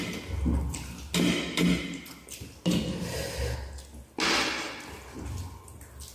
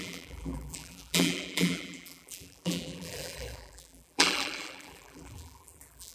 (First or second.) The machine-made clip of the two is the second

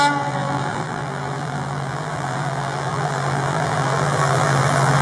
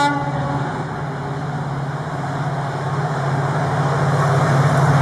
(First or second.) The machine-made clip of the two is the first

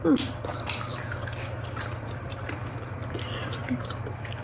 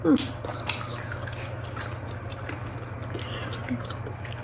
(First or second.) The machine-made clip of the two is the first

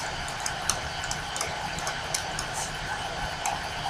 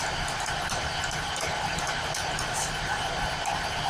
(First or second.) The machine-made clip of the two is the first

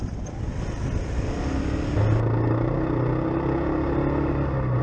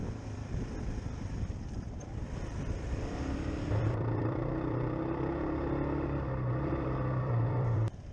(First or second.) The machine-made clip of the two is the second